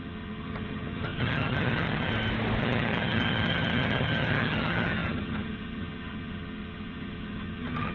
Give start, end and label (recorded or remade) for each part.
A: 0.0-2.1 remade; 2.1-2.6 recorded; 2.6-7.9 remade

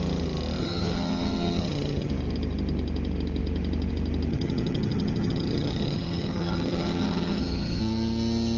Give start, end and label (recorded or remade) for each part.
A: 0.0-0.6 recorded; 0.6-2.1 remade; 2.1-4.3 recorded; 4.3-7.8 remade; 7.8-8.6 recorded